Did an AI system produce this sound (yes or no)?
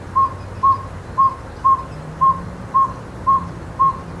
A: no